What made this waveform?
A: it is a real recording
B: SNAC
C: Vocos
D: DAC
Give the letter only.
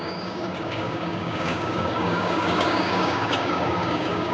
D